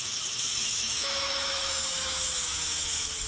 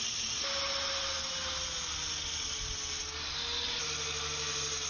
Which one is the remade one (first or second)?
first